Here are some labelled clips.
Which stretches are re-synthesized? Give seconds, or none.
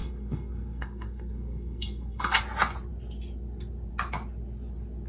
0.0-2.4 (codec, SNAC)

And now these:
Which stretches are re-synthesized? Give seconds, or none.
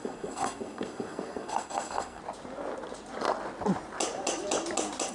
0.0-2.2 (codec, SNAC)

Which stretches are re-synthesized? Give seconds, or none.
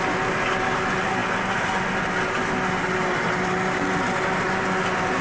none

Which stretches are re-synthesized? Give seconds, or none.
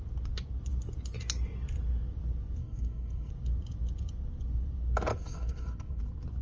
2.6-3.3 (codec, SNAC); 5.1-6.0